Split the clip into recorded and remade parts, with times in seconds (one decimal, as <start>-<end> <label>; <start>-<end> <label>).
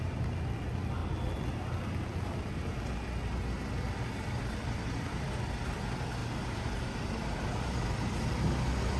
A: 0.0-6.2 recorded; 6.2-6.9 remade; 6.9-9.0 recorded